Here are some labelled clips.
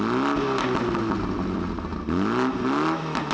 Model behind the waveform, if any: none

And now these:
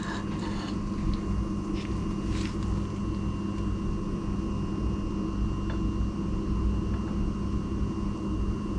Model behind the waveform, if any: none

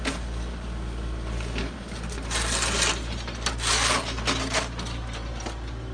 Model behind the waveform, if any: none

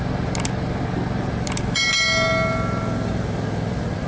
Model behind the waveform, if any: none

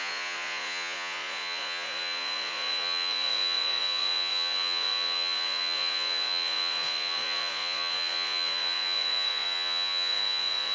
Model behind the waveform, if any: vocoder, Vocos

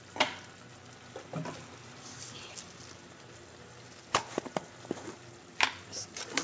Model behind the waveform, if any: none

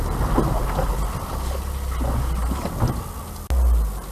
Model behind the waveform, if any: none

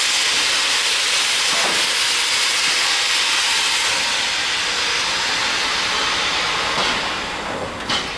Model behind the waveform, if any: none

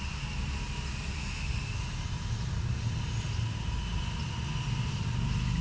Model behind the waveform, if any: none